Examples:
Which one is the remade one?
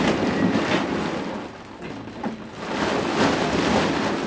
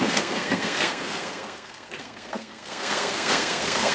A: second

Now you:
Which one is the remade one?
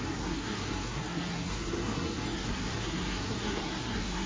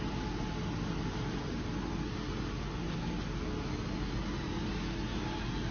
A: first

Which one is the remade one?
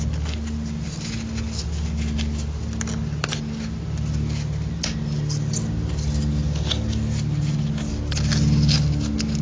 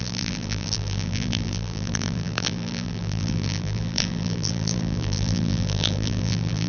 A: second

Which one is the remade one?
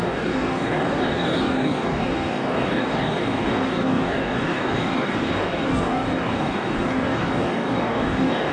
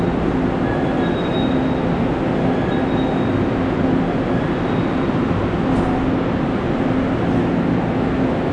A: first